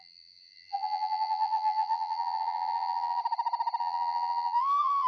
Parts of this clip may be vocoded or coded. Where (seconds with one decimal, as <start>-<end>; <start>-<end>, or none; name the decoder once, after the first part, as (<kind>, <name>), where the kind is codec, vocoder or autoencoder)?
0.0-3.2 (vocoder, BigVGAN v2); 3.8-5.1